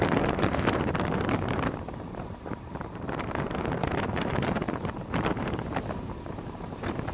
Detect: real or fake fake